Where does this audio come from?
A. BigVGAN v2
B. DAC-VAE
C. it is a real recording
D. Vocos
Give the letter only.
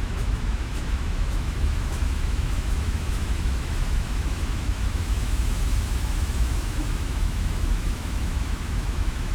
B